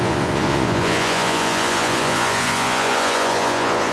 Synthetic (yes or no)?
yes